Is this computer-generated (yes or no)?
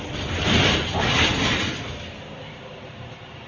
no